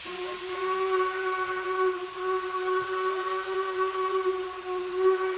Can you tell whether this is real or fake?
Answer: fake